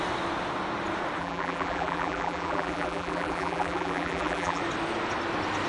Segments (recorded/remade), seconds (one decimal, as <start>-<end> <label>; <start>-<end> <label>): 0.0-1.2 recorded; 1.2-4.6 remade; 4.6-5.7 recorded